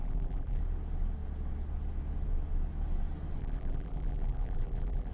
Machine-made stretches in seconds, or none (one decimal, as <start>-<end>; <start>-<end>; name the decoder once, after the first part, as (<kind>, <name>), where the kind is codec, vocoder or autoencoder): 0.0-0.6 (vocoder, BigVGAN v2); 3.4-5.1